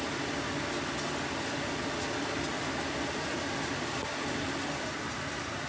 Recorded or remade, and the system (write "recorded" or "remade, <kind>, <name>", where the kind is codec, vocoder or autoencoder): recorded